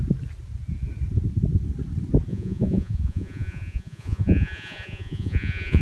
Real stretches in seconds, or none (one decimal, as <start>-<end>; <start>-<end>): 0.0-2.3